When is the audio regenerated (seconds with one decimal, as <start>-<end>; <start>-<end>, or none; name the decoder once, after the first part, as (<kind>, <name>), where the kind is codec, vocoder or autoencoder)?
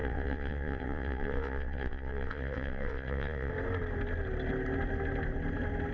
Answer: 0.0-3.5 (vocoder, WaveNeXt)